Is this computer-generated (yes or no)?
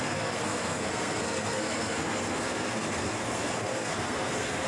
yes